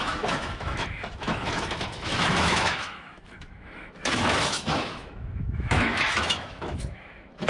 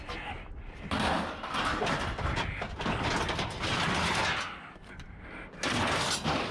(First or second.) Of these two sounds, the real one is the second